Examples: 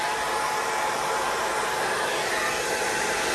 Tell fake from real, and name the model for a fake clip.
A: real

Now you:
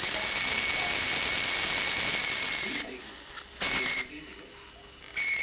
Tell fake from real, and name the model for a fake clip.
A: real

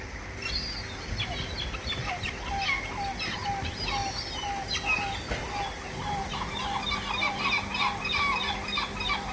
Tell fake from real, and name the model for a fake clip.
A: real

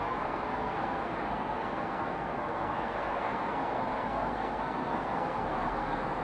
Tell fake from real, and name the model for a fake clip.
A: fake, codec, SNAC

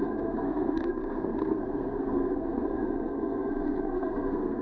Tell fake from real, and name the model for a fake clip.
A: fake, codec, SNAC